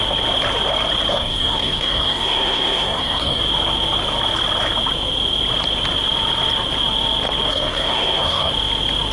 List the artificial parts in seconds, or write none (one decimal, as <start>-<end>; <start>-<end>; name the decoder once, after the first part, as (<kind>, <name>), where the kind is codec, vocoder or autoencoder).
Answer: 1.1-3.4 (codec, SNAC); 7.5-8.5